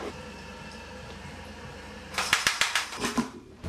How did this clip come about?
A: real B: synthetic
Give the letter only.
B